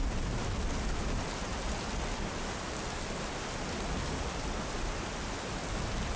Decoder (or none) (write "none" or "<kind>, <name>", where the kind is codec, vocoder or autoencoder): none